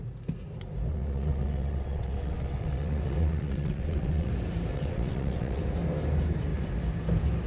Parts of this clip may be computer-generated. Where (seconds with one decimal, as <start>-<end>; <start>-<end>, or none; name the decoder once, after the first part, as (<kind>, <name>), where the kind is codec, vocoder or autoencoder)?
0.9-4.3 (vocoder, WaveNeXt); 4.7-5.6

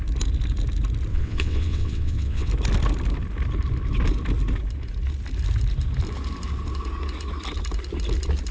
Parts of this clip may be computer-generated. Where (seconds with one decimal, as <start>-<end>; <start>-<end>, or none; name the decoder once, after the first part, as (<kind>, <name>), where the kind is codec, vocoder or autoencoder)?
1.1-2.5 (vocoder, WaveNeXt)